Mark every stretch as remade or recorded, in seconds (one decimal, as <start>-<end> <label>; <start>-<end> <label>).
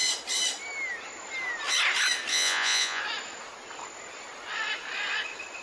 0.0-2.3 recorded; 2.3-3.0 remade; 3.0-5.6 recorded